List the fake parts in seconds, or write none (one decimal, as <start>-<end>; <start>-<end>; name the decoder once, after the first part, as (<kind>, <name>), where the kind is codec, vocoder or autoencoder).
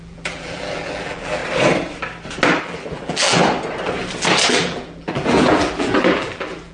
0.0-1.4 (vocoder, BigVGAN v2); 2.6-3.4; 4.5-6.7